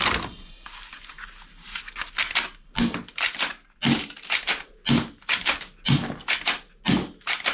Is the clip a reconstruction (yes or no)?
no